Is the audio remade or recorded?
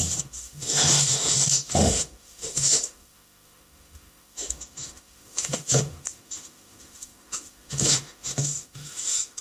remade